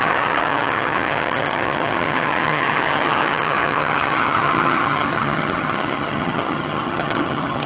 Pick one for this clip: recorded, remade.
remade